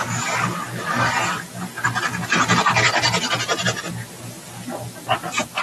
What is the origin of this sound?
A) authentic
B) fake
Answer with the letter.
A